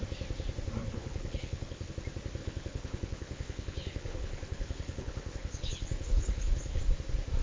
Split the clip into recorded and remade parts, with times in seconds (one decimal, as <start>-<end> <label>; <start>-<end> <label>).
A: 0.0-0.8 recorded; 0.8-1.9 remade; 1.9-2.4 recorded; 2.4-6.8 remade; 6.8-7.4 recorded